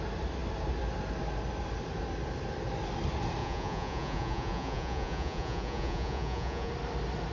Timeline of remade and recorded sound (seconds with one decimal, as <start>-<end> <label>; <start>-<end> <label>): 0.0-3.4 recorded; 3.4-6.7 remade; 6.7-7.3 recorded